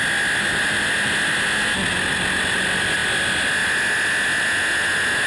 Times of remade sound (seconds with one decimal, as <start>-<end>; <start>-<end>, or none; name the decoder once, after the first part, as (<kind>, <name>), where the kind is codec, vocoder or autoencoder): none